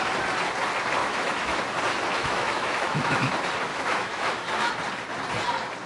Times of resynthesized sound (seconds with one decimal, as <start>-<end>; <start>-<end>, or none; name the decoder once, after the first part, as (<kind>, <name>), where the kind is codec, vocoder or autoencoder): 1.0-1.6 (autoencoder, DAC-VAE); 2.2-3.3; 3.7-4.7